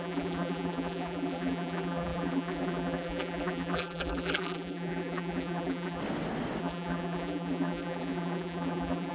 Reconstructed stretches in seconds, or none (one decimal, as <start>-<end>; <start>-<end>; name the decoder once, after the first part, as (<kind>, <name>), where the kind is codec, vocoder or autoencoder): 0.0-6.0 (vocoder, BigVGAN v2); 6.6-9.1